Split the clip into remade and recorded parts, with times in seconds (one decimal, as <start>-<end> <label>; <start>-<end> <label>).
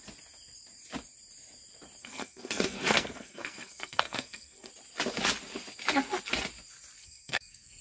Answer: 0.0-2.0 recorded; 2.0-4.7 remade; 4.7-7.0 recorded; 7.0-7.8 remade